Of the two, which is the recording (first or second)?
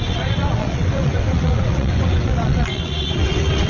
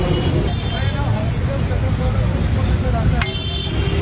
second